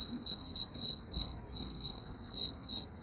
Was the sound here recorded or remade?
remade